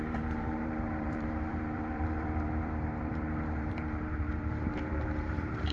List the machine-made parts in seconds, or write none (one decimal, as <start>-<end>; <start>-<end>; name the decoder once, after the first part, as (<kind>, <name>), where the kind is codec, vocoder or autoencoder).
0.0-5.7 (vocoder, BigVGAN v2)